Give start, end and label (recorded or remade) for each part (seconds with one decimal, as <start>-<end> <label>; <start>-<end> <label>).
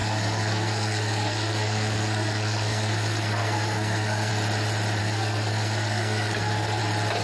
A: 0.0-4.3 remade; 4.3-5.0 recorded; 5.0-6.8 remade; 6.8-7.2 recorded